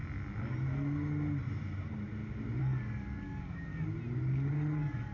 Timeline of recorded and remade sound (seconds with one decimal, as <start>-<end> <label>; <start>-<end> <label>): 0.0-2.6 recorded; 2.6-3.7 remade; 3.7-4.5 recorded; 4.5-5.1 remade